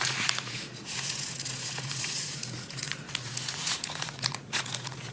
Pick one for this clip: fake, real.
fake